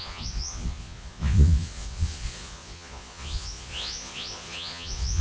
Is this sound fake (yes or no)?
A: yes